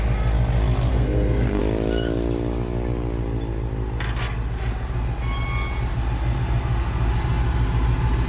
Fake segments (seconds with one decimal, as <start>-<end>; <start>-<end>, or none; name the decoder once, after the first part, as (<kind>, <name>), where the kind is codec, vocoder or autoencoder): 0.9-1.6 (codec, SNAC)

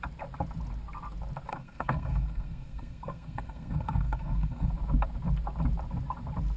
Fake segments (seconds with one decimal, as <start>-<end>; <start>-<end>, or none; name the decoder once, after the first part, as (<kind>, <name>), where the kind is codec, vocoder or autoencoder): 1.5-4.7 (codec, SNAC)

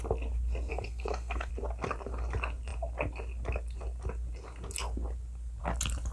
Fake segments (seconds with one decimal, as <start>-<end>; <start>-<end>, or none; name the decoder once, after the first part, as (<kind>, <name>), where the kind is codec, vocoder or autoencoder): 0.7-1.5 (codec, SNAC)